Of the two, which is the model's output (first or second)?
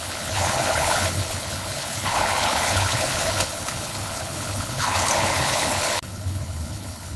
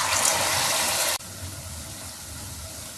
first